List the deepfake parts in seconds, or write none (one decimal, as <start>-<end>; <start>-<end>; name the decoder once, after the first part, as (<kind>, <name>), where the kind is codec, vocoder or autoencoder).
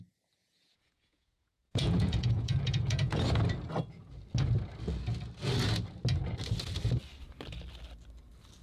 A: 0.4-3.2 (vocoder, Vocos)